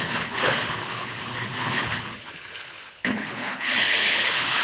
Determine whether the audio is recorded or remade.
remade